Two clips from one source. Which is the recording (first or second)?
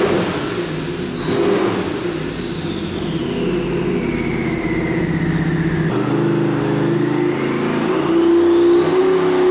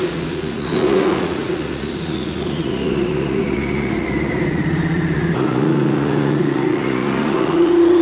first